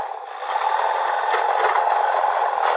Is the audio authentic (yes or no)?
yes